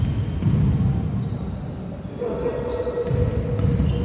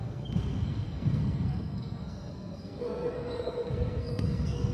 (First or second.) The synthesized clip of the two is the second